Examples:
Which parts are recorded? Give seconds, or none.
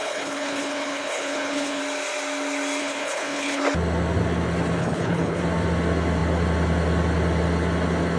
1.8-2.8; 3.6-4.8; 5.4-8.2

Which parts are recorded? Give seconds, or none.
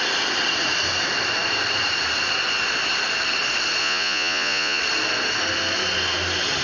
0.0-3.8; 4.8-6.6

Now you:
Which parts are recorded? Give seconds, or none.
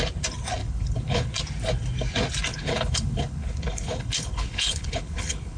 0.0-0.6; 1.3-2.5